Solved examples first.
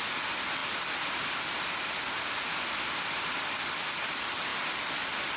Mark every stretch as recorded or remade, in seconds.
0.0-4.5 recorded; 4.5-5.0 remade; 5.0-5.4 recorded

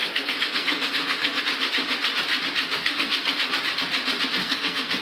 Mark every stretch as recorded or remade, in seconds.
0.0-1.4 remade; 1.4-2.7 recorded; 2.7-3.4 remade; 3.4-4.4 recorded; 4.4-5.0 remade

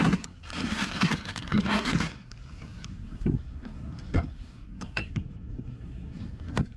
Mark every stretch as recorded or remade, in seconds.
0.0-6.8 remade

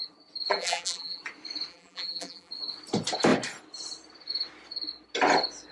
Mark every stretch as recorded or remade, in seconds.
0.0-0.5 recorded; 0.5-1.2 remade; 1.2-1.7 recorded; 1.7-2.5 remade; 2.5-5.7 recorded

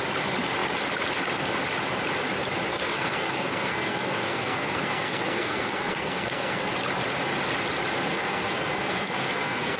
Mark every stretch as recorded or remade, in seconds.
0.0-2.7 recorded; 2.7-6.7 remade; 6.7-8.1 recorded; 8.1-9.8 remade